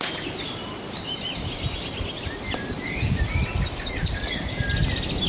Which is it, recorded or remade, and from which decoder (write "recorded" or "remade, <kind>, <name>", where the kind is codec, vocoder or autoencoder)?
recorded